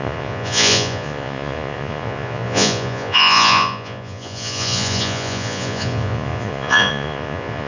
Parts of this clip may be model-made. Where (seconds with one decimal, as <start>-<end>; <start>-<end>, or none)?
0.0-7.7